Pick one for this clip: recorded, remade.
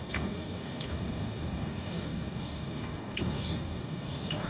remade